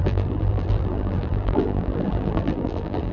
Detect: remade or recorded remade